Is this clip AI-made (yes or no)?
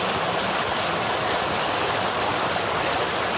no